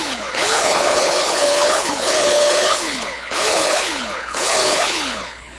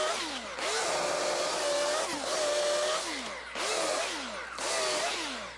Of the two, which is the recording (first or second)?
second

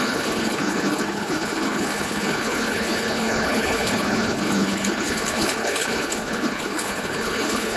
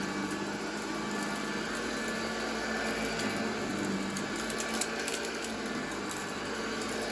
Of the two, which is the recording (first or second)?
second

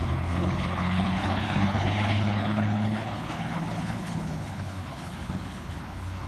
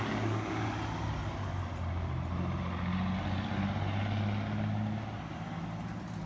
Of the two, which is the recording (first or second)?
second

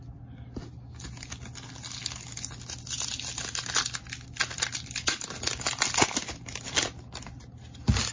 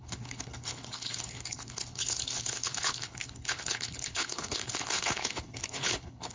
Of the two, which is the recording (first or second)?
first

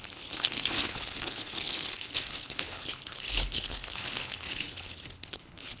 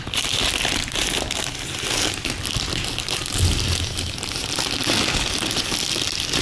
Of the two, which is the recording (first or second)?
second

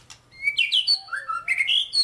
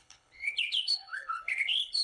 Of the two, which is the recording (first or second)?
first